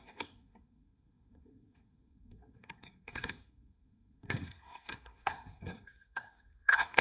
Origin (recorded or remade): remade